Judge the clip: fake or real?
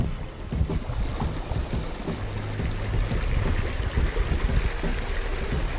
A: real